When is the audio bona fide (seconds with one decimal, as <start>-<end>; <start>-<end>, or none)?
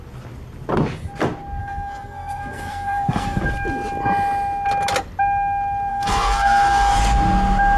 0.0-1.6; 3.4-5.9; 7.0-7.8